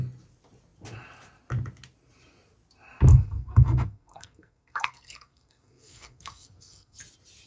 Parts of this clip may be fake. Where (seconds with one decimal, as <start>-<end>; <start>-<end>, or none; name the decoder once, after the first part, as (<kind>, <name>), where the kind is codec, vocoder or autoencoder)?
3.1-7.0 (codec, SNAC)